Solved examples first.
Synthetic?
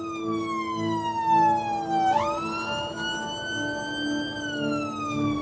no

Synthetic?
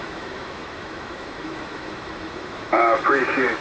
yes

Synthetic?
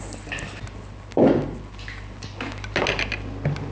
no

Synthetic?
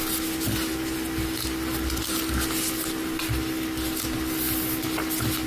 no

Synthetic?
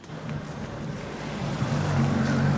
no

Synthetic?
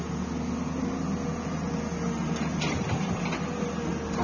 no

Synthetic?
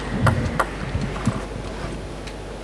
no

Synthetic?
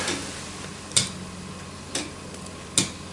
no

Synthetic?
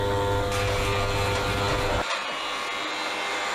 no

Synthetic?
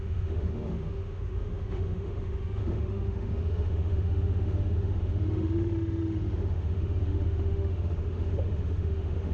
yes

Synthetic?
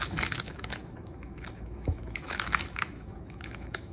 yes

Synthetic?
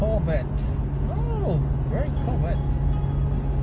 no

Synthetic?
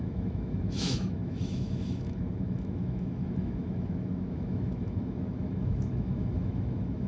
yes